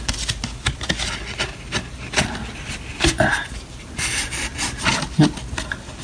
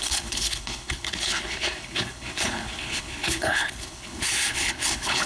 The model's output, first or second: second